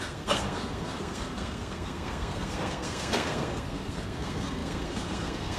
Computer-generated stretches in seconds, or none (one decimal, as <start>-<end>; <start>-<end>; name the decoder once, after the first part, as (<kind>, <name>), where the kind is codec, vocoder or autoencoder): 0.0-5.6 (codec, SNAC)